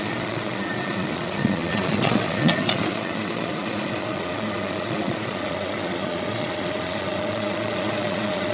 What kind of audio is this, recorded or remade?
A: remade